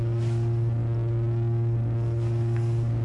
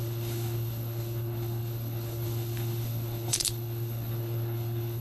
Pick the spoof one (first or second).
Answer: second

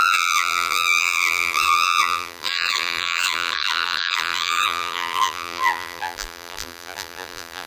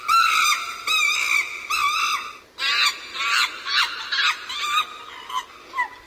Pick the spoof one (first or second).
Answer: first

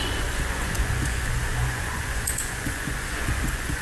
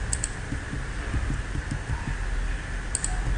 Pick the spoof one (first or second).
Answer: first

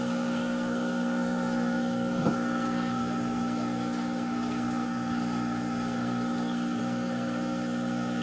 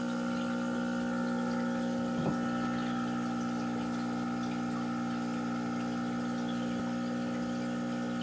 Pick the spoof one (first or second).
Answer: first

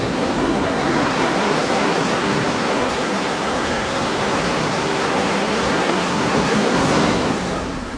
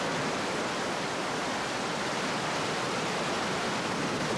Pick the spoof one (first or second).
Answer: first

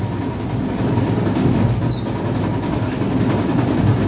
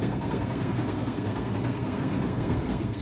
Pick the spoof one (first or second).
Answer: second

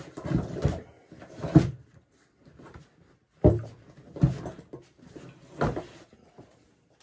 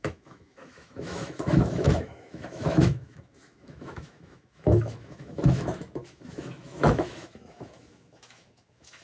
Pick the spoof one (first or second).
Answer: second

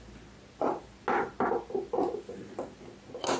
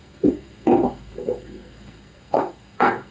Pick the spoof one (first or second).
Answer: second